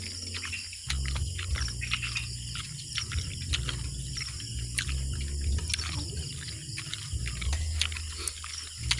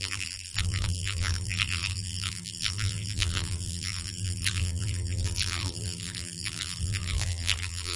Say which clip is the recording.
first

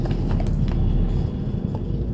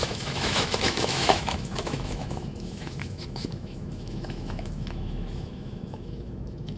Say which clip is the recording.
first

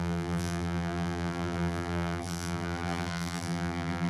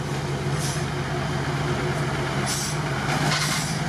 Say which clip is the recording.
second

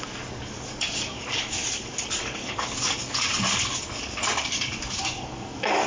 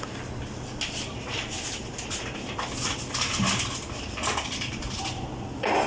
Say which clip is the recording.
second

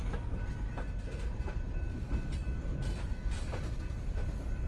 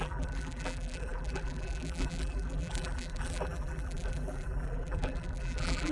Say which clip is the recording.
first